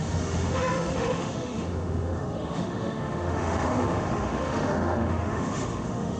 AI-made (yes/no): yes